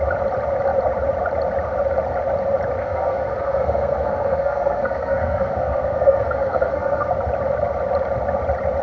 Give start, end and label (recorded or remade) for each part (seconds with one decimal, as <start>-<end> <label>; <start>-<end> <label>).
0.0-2.8 recorded; 2.8-7.1 remade; 7.1-8.8 recorded